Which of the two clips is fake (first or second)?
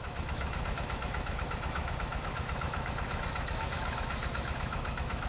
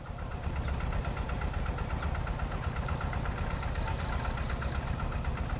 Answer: first